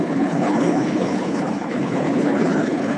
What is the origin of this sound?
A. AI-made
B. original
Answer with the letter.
A